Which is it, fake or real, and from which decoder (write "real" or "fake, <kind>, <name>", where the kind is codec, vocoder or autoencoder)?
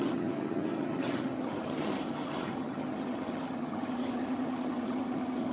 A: fake, vocoder, HiFi-GAN